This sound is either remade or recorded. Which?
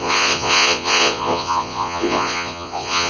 remade